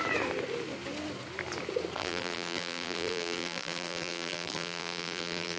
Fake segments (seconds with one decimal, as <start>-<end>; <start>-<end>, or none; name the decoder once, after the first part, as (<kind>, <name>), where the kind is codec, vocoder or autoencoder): 2.0-5.6 (vocoder, BigVGAN v2)